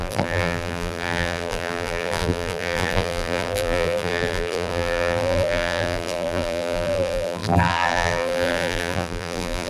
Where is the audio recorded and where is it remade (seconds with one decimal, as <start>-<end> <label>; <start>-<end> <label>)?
0.0-9.7 remade